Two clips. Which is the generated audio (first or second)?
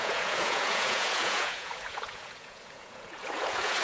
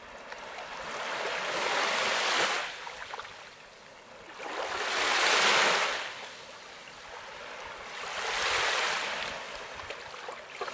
first